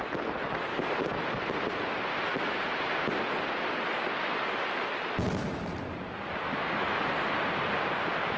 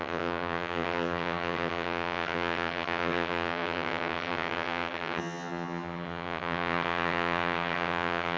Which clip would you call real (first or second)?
first